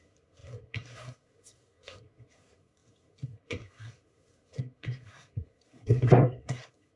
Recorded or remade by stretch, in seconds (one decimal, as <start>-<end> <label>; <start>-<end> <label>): 0.0-7.0 remade